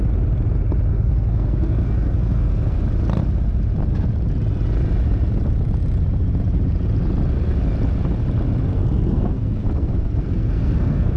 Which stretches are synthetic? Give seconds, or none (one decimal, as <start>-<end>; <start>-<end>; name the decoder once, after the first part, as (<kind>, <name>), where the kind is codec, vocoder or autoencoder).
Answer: 0.9-2.8 (codec, SNAC); 8.7-11.2